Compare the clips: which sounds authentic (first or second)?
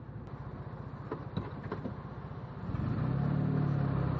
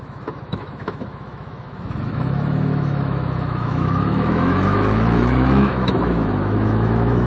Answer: first